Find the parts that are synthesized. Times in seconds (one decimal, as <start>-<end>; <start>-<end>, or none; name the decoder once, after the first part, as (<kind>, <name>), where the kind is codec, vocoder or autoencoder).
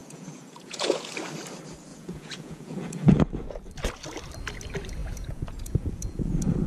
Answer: 0.0-1.1 (vocoder, Vocos); 1.9-3.2; 5.0-6.7